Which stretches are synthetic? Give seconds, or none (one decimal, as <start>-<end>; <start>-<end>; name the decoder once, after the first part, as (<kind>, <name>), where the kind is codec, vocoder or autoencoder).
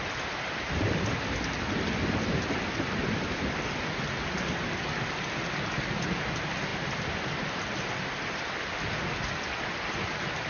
none